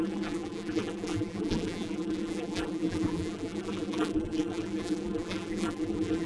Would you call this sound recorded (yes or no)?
no